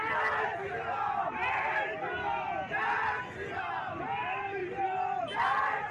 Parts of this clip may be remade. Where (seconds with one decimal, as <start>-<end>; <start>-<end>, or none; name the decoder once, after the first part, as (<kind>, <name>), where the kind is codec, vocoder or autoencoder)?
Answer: none